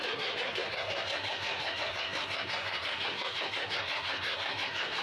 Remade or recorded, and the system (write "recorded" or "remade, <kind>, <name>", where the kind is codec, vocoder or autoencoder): remade, codec, SNAC